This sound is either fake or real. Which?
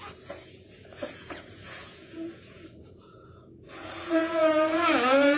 fake